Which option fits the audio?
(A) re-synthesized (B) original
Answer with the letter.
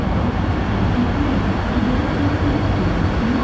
B